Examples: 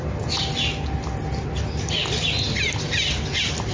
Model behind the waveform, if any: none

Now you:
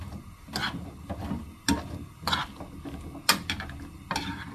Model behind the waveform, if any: none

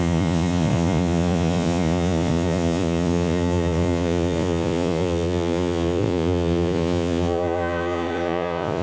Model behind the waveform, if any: vocoder, Vocos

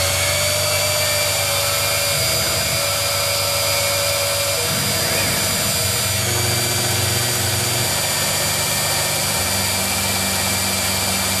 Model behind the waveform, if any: none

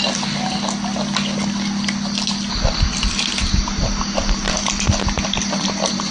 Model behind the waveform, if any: none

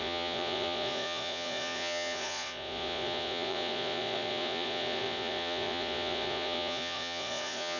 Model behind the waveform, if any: vocoder, Vocos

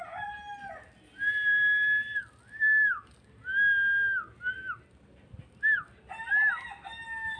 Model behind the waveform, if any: none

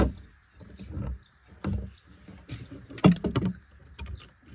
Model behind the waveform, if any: none